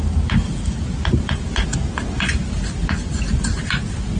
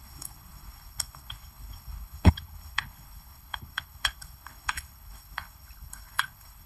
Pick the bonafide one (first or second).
first